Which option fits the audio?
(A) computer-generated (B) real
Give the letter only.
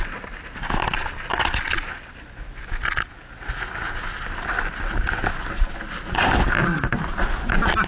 B